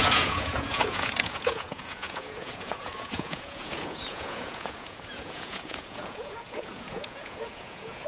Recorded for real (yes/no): no